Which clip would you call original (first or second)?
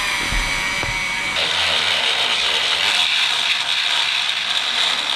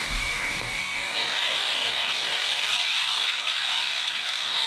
first